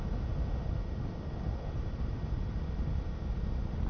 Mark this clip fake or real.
real